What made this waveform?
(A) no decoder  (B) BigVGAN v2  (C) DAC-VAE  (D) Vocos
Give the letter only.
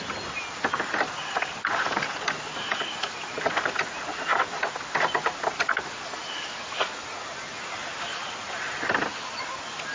A